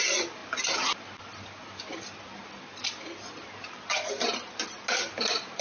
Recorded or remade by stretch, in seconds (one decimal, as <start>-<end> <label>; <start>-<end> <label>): 0.0-5.6 recorded